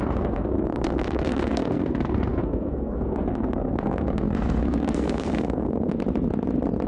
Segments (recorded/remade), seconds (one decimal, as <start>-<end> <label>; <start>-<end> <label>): 0.0-6.0 remade; 6.0-6.9 recorded